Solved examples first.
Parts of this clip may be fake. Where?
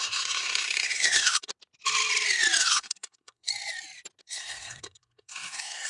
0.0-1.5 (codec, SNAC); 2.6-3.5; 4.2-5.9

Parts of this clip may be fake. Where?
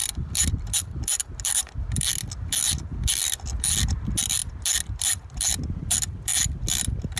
none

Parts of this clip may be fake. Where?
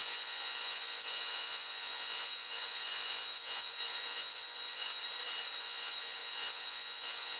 0.0-5.0 (vocoder, Vocos); 5.6-7.4